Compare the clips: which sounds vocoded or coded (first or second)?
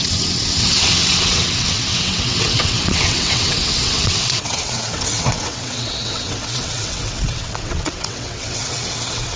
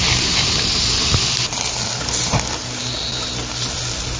first